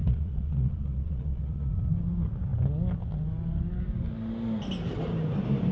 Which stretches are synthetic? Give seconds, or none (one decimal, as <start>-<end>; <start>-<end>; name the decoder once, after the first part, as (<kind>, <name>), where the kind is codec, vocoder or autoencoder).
0.0-1.7 (vocoder, Vocos)